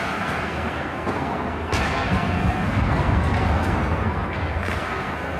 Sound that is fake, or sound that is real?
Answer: fake